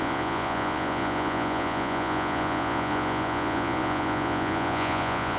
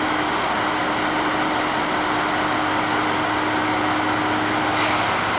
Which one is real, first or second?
second